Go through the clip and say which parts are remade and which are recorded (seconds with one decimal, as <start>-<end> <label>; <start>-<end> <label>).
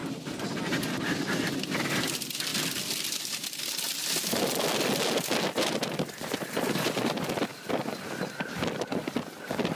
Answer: 0.0-9.8 recorded